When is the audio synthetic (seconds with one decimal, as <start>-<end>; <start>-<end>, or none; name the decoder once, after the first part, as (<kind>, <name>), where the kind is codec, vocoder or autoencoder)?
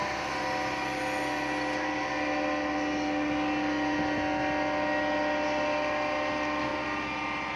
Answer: none